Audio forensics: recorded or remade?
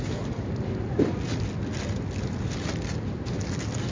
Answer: recorded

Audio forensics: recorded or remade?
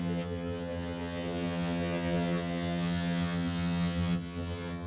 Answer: remade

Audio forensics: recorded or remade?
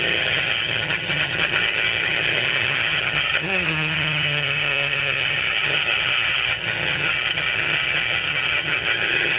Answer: remade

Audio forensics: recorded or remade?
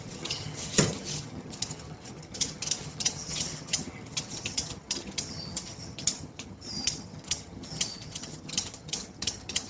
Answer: remade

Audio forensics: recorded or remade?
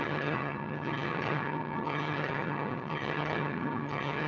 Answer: remade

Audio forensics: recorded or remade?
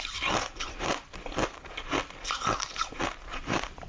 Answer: recorded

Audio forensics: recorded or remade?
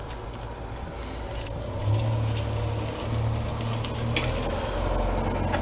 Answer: recorded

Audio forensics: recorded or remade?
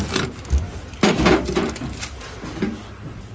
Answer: recorded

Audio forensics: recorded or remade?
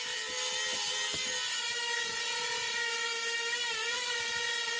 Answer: recorded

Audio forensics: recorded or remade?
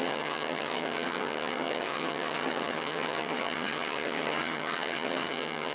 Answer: remade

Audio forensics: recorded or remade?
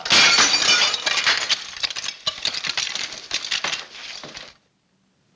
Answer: recorded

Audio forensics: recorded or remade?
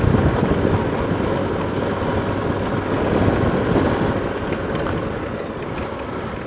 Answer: recorded